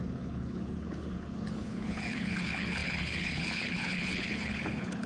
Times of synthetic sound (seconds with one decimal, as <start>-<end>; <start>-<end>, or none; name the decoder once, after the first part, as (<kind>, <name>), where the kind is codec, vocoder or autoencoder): 0.0-5.1 (codec, HILCodec)